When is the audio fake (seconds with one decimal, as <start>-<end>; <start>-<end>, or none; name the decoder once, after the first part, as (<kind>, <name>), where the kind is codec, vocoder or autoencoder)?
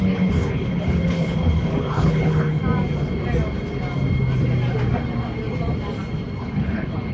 0.0-2.6 (codec, HILCodec); 6.4-7.1